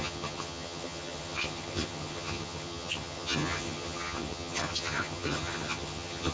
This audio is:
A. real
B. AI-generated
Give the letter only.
B